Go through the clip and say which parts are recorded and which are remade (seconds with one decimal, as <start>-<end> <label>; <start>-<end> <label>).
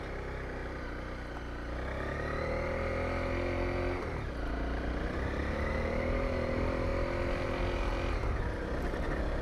0.0-9.4 recorded